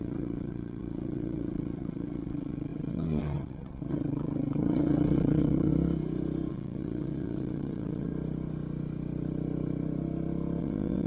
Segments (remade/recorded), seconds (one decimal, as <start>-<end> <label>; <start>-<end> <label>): 0.0-5.7 remade; 5.7-6.5 recorded; 6.5-8.1 remade; 8.1-10.6 recorded; 10.6-11.1 remade